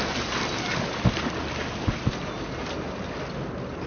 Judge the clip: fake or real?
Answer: real